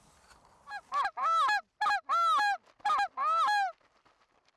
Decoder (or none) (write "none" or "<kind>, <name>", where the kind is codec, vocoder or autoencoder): none